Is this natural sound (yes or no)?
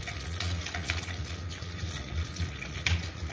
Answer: no